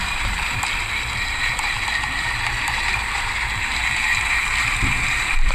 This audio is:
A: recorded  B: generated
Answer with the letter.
B